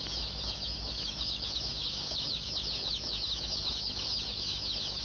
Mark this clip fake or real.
fake